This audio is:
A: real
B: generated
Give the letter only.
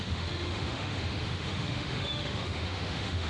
B